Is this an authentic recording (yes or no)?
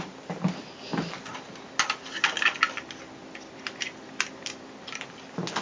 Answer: yes